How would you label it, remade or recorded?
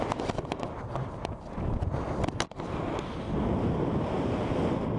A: recorded